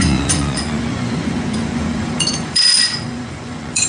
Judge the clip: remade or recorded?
remade